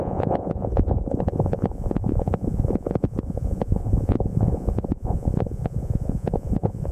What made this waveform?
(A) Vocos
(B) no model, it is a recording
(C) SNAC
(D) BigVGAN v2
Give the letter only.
A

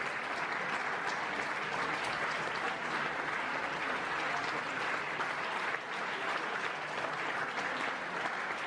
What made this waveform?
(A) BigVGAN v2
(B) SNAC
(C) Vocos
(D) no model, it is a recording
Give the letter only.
D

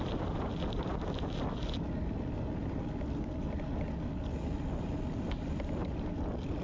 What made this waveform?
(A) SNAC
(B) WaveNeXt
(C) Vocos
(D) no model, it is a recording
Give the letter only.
D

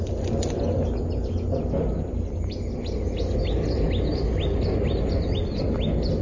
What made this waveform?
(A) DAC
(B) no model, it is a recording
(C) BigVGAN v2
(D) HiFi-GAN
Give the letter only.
B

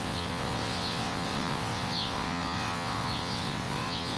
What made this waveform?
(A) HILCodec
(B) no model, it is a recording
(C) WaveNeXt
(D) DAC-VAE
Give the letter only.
C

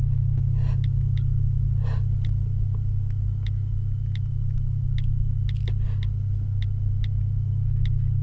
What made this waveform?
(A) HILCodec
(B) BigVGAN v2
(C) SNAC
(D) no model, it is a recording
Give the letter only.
D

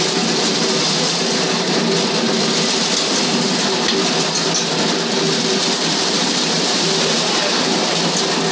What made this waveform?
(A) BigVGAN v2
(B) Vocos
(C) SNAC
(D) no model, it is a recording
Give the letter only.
D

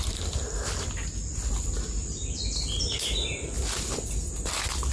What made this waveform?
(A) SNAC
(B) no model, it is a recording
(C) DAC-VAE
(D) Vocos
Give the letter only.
B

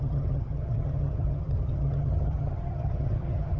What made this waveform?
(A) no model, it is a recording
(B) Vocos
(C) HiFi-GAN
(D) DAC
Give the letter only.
C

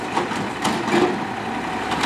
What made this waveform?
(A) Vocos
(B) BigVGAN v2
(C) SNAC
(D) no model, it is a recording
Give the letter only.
D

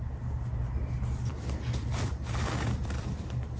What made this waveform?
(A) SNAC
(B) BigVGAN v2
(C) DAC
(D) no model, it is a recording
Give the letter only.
D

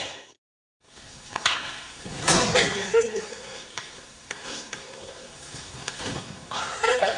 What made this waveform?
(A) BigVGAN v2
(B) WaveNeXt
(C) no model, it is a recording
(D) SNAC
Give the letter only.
D